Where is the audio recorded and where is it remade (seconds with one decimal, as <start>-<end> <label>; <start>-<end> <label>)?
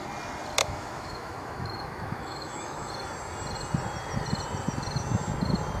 0.0-0.6 recorded; 0.6-2.9 remade; 2.9-5.8 recorded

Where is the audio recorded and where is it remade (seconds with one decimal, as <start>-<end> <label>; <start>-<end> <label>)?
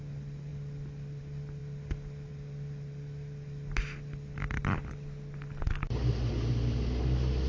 0.0-7.5 recorded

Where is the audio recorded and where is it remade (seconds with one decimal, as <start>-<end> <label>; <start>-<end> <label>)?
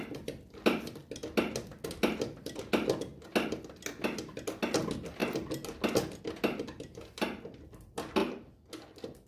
0.0-9.3 recorded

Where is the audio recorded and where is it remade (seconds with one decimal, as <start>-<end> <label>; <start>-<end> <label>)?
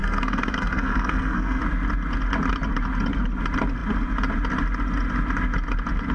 0.0-1.6 remade; 1.6-6.1 recorded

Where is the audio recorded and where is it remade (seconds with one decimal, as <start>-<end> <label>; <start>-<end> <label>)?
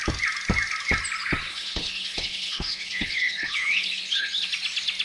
0.0-1.5 recorded; 1.5-4.5 remade; 4.5-5.0 recorded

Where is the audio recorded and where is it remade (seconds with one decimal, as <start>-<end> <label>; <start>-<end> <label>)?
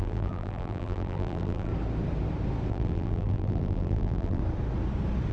0.0-1.7 remade; 1.7-2.7 recorded; 2.7-4.4 remade; 4.4-5.3 recorded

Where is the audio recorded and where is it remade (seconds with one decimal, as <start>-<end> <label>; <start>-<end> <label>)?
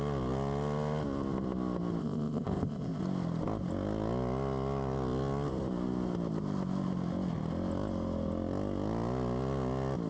0.0-2.0 recorded; 2.0-3.0 remade; 3.0-10.1 recorded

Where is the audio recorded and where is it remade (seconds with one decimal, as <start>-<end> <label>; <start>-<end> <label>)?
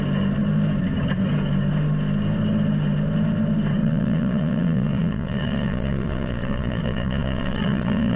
0.0-3.8 recorded; 3.8-8.2 remade